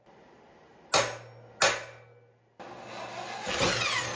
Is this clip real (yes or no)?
yes